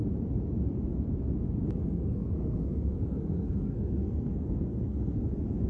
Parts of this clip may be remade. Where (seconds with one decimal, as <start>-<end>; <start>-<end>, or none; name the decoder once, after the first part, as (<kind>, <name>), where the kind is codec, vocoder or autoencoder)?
1.8-5.2 (codec, SNAC)